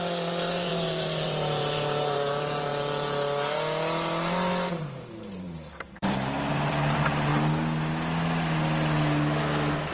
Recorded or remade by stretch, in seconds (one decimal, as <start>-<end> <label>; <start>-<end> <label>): 0.0-2.7 remade; 2.7-4.8 recorded; 4.8-7.3 remade; 7.3-9.9 recorded